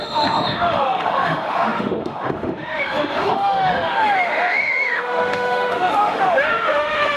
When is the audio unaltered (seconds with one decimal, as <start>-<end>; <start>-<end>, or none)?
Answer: none